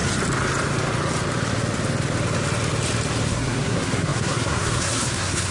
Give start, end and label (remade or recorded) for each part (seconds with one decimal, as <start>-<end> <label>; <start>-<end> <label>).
0.0-3.3 recorded; 3.3-5.5 remade